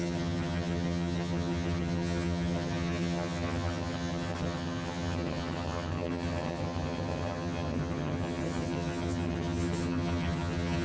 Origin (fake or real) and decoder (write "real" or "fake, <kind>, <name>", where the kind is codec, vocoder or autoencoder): fake, vocoder, HiFi-GAN